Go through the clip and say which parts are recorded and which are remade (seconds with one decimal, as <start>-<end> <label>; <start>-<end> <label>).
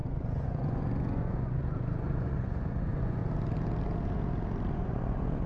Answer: 0.0-3.2 remade; 3.2-4.7 recorded; 4.7-5.5 remade